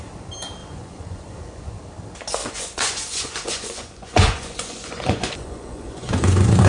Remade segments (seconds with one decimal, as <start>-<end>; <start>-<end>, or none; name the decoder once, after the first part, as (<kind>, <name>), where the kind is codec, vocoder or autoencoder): 0.6-1.7 (vocoder, Vocos); 2.4-6.7